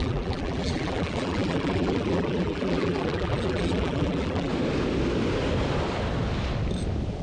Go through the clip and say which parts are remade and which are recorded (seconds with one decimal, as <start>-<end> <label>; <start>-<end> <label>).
0.0-4.5 remade; 4.5-7.2 recorded